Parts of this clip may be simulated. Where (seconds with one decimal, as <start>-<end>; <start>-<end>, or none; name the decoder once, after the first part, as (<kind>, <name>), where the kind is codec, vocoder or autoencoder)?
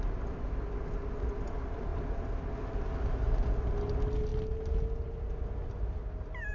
none